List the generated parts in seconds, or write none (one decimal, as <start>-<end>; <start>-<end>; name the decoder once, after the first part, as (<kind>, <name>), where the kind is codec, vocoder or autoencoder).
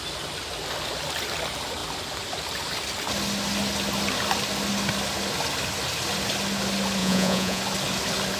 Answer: 7.0-7.6 (vocoder, Vocos)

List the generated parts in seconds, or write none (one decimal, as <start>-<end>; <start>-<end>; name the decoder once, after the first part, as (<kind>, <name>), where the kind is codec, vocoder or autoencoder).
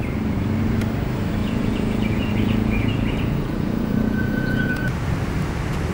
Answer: 1.4-4.9 (vocoder, Vocos)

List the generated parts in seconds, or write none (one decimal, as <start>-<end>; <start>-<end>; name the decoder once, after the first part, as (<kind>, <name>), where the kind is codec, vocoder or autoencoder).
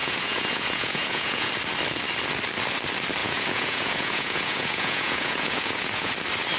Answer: 0.0-1.5 (vocoder, Vocos); 3.2-6.1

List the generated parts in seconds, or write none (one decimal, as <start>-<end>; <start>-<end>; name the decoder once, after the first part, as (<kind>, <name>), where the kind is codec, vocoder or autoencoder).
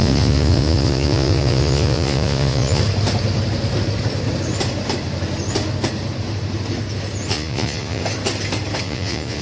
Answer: 0.0-2.8 (vocoder, Vocos); 7.3-8.0; 8.8-9.4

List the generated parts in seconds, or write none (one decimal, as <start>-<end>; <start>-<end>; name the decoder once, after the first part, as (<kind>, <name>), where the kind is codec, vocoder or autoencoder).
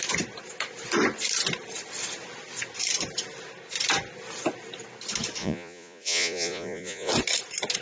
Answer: 5.4-7.1 (vocoder, Vocos)